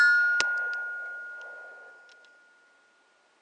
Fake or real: real